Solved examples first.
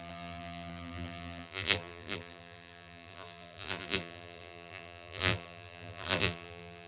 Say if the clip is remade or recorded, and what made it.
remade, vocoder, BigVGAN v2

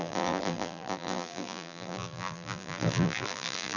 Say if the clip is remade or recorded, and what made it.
remade, vocoder, BigVGAN v2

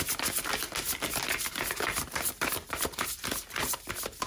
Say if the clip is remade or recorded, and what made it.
recorded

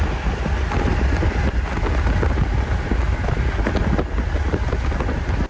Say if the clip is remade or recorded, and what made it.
recorded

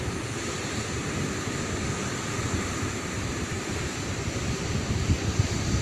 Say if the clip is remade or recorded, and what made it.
recorded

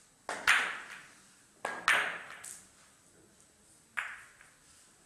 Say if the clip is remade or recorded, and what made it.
recorded